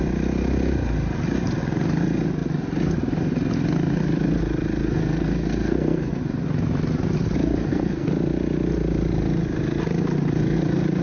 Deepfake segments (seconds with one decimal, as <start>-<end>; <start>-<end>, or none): 4.8-6.2; 7.4-8.1